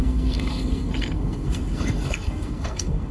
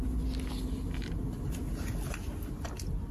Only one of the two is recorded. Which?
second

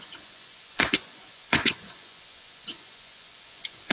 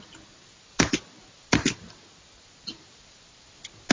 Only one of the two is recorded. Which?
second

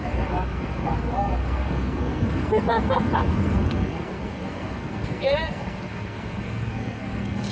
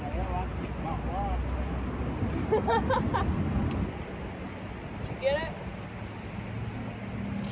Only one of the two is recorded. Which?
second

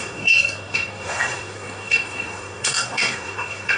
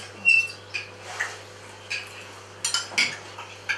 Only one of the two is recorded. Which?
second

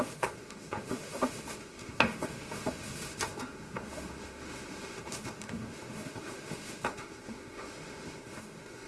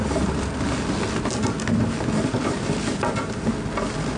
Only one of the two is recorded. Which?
second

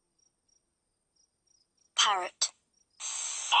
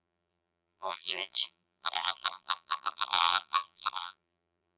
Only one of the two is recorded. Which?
first